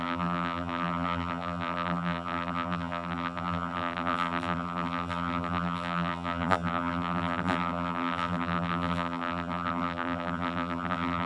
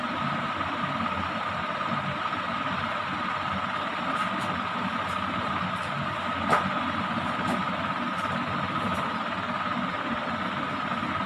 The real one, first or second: second